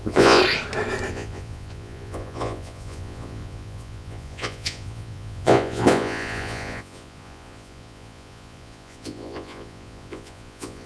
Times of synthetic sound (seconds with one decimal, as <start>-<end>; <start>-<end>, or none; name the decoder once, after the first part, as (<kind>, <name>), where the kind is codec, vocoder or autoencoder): 0.0-0.4 (vocoder, Vocos); 1.1-10.9

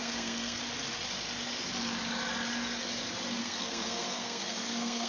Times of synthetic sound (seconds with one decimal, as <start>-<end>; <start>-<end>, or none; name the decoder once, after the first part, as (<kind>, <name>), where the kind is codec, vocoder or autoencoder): 0.0-0.6 (codec, SNAC); 3.4-5.1

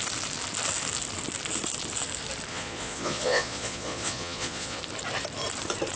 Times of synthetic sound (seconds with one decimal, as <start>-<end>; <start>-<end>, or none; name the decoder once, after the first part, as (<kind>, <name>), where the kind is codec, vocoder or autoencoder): 2.5-4.8 (vocoder, Vocos)